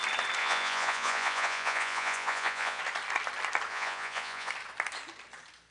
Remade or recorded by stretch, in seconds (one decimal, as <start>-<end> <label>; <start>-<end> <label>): 0.0-0.4 recorded; 0.4-2.8 remade; 2.8-3.7 recorded; 3.7-4.5 remade; 4.5-5.7 recorded